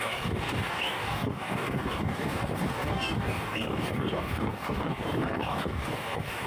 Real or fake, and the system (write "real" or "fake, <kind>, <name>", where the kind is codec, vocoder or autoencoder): fake, codec, DAC